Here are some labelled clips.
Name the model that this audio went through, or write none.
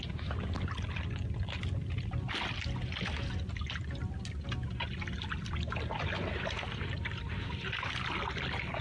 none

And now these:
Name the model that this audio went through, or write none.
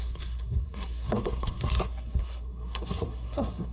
codec, SNAC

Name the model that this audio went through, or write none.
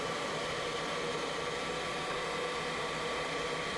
none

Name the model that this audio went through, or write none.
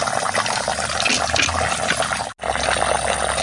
none